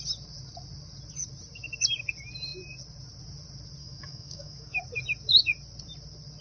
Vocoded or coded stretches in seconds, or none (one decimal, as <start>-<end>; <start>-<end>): 3.8-4.8